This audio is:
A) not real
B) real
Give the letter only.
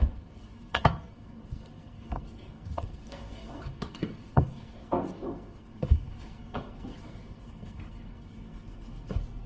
A